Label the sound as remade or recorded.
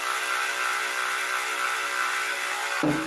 recorded